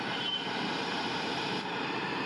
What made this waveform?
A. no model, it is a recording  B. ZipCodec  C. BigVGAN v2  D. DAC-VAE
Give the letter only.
C